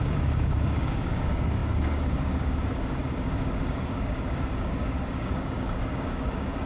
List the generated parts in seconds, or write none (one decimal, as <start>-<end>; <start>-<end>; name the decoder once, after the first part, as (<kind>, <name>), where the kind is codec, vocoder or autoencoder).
0.0-6.7 (codec, DAC)